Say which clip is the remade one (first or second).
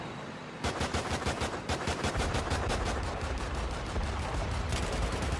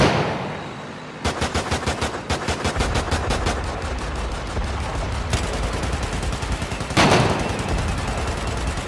first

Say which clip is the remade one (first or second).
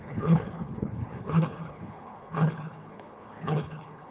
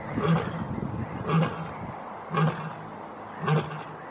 first